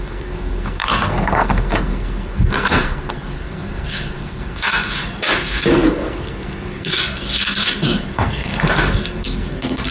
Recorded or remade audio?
remade